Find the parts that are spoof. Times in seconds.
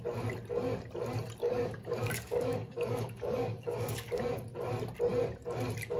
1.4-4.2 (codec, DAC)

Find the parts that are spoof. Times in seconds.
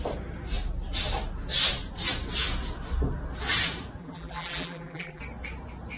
4.0-5.2 (vocoder, BigVGAN v2)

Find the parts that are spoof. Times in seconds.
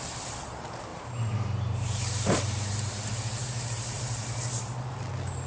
0.9-2.9 (vocoder, BigVGAN v2); 3.4-4.4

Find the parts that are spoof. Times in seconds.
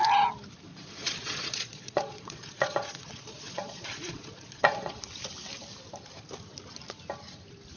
0.7-5.0 (vocoder, Vocos)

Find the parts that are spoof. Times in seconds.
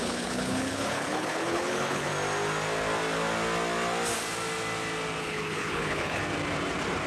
0.0-2.1 (codec, HILCodec); 5.2-6.2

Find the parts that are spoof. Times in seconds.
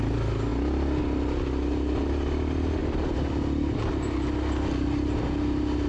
2.8-3.9 (vocoder, BigVGAN v2)